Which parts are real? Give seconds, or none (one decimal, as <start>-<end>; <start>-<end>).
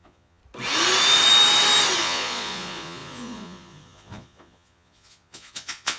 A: 0.4-2.0